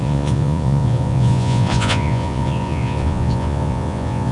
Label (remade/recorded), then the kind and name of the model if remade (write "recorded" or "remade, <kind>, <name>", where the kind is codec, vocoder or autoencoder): remade, vocoder, Vocos